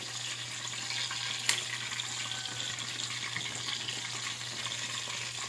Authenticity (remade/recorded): recorded